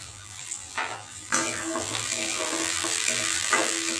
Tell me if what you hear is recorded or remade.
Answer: remade